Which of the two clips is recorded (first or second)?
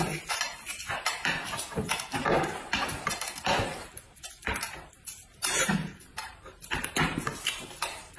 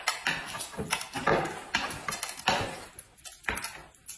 second